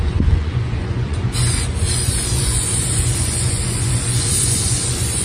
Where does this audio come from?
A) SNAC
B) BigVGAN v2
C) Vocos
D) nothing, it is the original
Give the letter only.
C